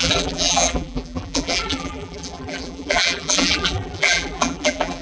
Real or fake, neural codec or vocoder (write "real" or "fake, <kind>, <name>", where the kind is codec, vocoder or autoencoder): fake, vocoder, BigVGAN v2